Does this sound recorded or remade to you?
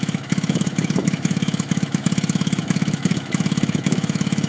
remade